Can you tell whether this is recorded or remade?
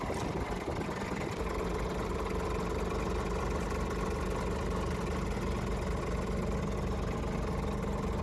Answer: recorded